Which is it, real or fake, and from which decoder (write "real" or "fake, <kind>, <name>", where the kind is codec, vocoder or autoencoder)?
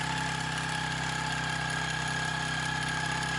real